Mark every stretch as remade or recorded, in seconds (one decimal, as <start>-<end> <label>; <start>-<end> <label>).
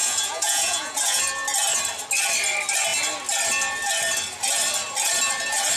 0.0-1.2 remade; 1.2-5.8 recorded